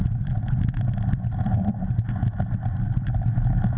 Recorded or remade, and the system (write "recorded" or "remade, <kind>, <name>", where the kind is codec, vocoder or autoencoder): recorded